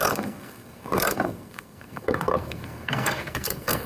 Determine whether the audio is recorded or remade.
remade